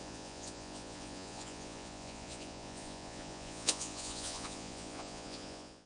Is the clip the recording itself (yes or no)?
no